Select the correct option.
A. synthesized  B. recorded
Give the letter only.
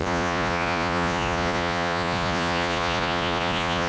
A